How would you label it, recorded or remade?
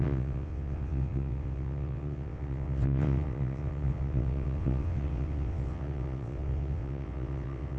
remade